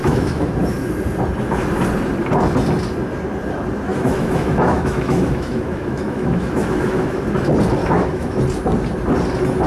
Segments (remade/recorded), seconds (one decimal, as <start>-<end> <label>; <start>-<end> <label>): 0.0-0.9 remade; 0.9-3.9 recorded; 3.9-7.2 remade; 7.2-7.8 recorded; 7.8-8.4 remade; 8.4-9.7 recorded